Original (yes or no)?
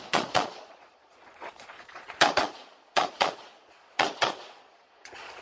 no